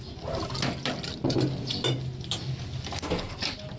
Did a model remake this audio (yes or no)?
no